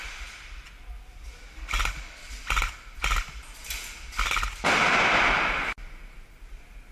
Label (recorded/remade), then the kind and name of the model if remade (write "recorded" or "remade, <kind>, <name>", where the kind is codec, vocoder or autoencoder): recorded